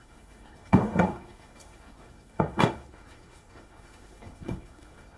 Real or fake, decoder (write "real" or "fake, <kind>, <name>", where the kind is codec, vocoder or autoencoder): fake, codec, SNAC